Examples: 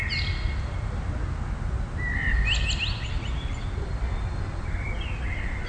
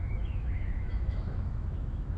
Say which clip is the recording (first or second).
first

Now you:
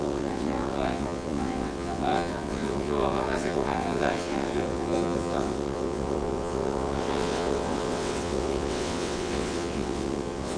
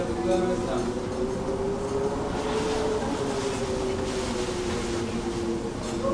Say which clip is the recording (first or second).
second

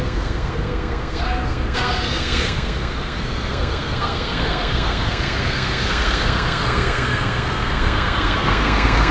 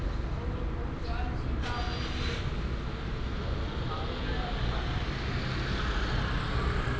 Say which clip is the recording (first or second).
second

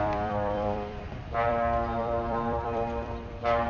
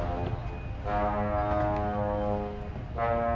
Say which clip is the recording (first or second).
second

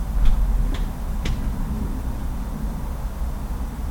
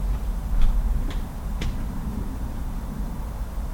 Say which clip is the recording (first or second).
first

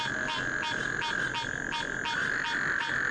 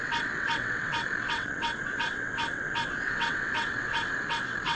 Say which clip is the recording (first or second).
first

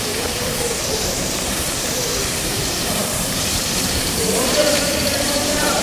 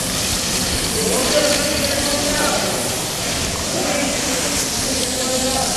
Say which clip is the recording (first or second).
second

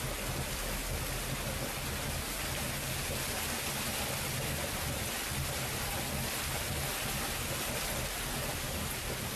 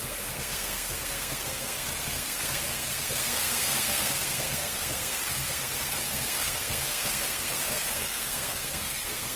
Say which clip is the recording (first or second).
first